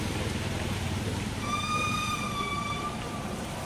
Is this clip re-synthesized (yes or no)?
yes